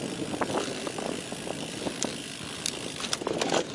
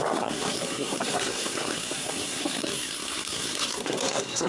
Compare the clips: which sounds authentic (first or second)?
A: first